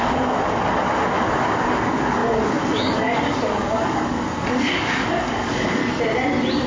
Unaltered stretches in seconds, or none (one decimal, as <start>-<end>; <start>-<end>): 5.8-6.7